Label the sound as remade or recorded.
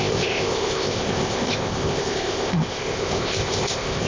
remade